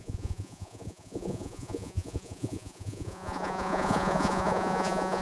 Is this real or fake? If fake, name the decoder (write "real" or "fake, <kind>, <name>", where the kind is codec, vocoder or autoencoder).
fake, vocoder, Vocos